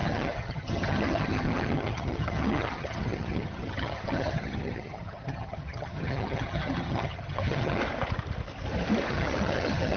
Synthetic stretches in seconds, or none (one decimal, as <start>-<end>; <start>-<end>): 0.0-7.8; 9.1-10.0